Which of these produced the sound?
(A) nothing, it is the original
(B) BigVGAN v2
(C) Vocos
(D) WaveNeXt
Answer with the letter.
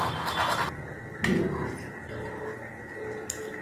A